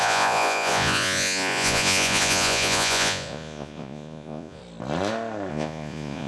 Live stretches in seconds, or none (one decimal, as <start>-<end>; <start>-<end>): 4.6-5.5